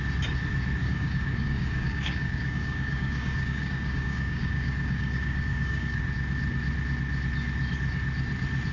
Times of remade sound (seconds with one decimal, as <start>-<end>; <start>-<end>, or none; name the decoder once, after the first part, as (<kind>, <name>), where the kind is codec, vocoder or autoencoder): 0.8-6.0 (codec, DAC)